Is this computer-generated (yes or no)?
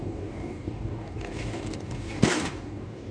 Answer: yes